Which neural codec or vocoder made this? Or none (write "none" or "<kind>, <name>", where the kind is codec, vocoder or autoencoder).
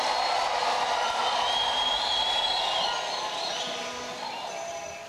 vocoder, BigVGAN v2